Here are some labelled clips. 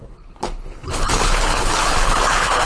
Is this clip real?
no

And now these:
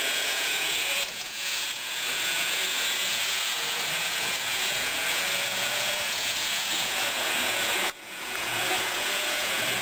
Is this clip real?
no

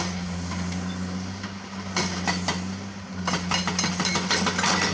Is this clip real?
yes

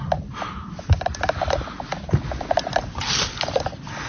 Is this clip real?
yes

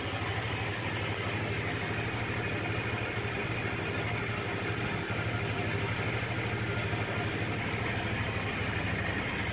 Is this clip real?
yes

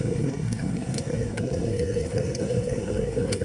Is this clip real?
no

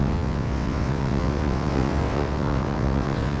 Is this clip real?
no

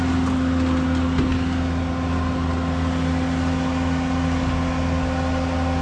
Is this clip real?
yes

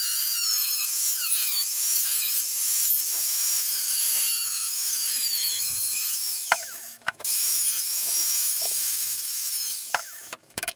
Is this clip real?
no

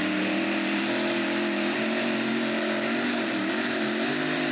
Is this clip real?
no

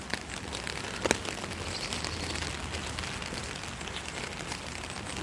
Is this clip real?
yes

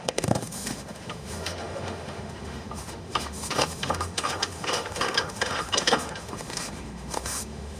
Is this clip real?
no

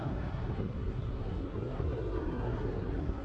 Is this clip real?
no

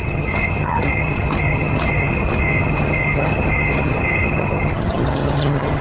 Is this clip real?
no